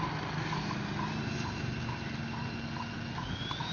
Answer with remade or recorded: recorded